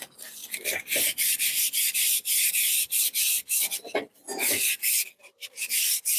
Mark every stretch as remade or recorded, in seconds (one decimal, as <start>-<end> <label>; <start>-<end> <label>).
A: 0.0-6.2 recorded